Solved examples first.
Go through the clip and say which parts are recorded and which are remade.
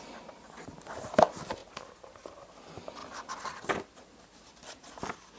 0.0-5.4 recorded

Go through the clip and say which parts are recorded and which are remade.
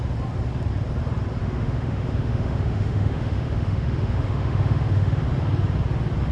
0.0-1.4 recorded; 1.4-5.2 remade; 5.2-6.3 recorded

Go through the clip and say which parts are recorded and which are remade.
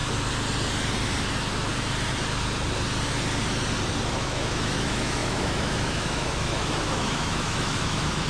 0.0-4.1 recorded; 4.1-8.3 remade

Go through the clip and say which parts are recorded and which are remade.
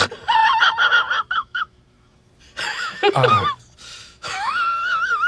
0.0-1.4 recorded; 1.4-2.3 remade; 2.3-2.7 recorded; 2.7-3.3 remade; 3.3-4.0 recorded; 4.0-4.5 remade; 4.5-5.3 recorded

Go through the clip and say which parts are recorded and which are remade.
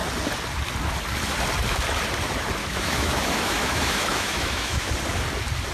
0.0-2.6 recorded; 2.6-4.9 remade; 4.9-5.7 recorded